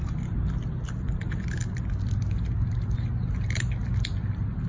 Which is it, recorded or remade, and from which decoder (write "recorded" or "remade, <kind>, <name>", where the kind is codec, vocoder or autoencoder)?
recorded